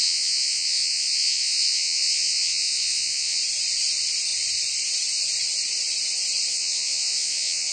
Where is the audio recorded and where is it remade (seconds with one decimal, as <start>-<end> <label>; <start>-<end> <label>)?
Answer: 0.0-3.4 remade; 3.4-6.5 recorded; 6.5-7.7 remade